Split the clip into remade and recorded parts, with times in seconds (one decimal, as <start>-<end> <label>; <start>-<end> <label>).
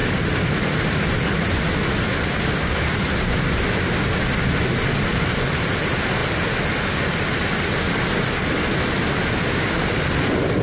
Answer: 0.0-1.0 remade; 1.0-10.6 recorded